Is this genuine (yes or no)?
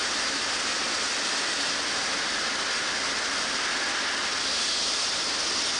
yes